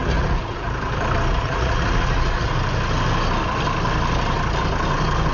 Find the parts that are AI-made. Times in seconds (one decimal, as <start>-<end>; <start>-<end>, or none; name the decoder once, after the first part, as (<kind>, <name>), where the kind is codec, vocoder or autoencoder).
0.0-0.7 (vocoder, Vocos); 1.3-2.5